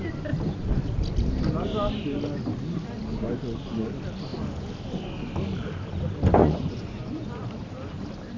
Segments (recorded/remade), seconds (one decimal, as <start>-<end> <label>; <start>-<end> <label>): 0.0-6.4 recorded; 6.4-7.3 remade; 7.3-8.4 recorded